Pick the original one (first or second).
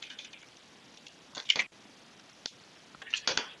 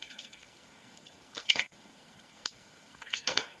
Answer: first